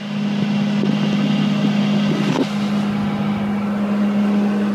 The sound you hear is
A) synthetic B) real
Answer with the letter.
B